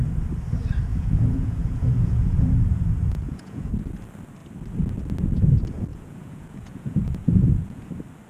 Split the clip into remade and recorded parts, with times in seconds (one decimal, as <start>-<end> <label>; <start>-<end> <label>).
0.0-0.9 recorded; 0.9-3.8 remade; 3.8-5.9 recorded; 5.9-7.9 remade; 7.9-8.3 recorded